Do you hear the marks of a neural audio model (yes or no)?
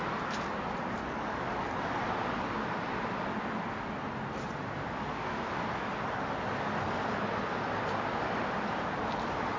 no